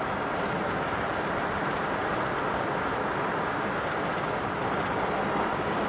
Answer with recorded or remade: recorded